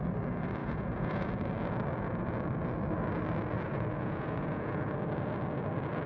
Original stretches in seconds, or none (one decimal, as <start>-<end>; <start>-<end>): 0.0-0.6; 1.3-3.7; 4.9-6.1